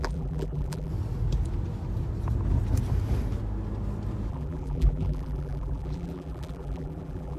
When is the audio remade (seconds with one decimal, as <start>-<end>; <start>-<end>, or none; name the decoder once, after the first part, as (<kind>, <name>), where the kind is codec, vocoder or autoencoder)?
0.0-0.9 (vocoder, BigVGAN v2); 4.3-7.4